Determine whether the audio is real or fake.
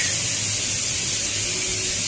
real